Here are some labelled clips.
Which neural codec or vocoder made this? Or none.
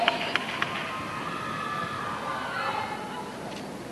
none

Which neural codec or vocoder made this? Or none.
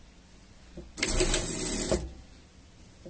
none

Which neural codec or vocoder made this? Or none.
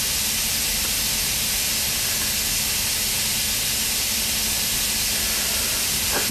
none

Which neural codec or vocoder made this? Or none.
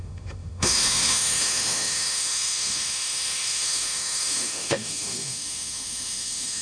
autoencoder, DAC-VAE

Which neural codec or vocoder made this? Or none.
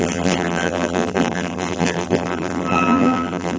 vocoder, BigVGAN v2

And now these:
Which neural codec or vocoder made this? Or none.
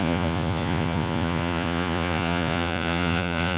vocoder, Vocos